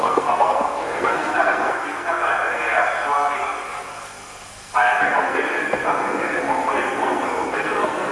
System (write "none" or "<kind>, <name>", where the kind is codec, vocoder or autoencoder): codec, SNAC